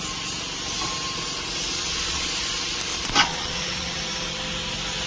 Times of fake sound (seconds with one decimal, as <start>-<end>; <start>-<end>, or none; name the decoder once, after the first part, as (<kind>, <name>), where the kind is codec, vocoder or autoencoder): 1.7-2.3 (vocoder, Vocos); 2.9-4.0